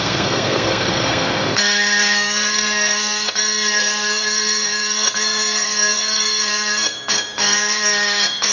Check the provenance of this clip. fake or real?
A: fake